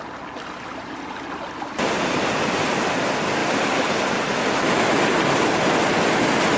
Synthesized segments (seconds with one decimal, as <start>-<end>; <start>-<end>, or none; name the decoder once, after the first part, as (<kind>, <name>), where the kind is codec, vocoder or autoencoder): none